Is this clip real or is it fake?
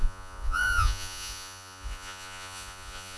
fake